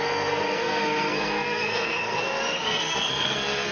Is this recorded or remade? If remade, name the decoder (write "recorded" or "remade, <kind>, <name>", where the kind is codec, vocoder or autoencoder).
remade, codec, SNAC